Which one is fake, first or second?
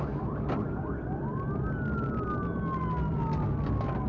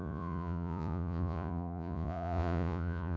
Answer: second